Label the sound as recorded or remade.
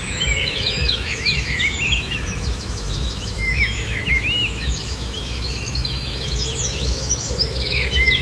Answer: remade